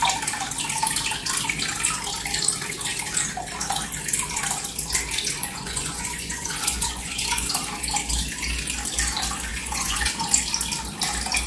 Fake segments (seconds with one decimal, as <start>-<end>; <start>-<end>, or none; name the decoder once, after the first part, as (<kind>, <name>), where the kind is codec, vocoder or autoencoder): 5.4-7.5 (vocoder, Vocos); 9.5-10.1